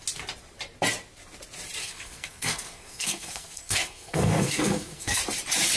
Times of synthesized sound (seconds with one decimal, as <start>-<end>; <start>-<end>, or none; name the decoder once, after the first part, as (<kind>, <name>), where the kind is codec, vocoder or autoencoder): 1.8-5.2 (codec, SNAC)